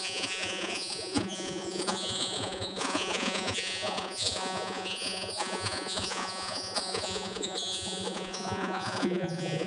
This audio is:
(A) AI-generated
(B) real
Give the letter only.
A